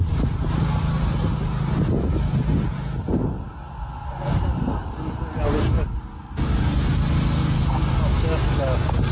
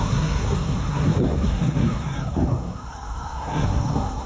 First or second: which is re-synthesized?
second